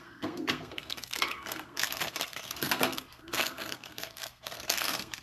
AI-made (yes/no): yes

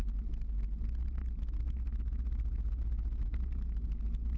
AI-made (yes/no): no